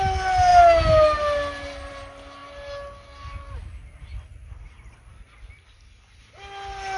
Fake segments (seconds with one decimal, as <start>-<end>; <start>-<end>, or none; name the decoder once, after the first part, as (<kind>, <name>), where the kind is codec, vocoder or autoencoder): none